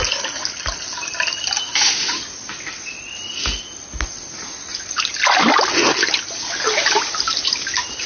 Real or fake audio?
real